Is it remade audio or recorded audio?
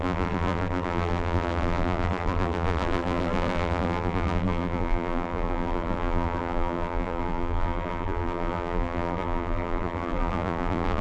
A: remade